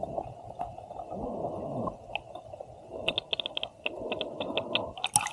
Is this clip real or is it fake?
real